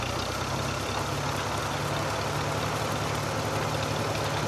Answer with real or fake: real